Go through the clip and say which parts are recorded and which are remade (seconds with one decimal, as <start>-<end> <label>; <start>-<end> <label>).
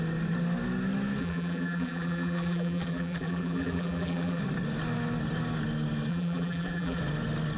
0.0-1.2 recorded; 1.2-4.4 remade; 4.4-6.1 recorded; 6.1-7.0 remade; 7.0-7.6 recorded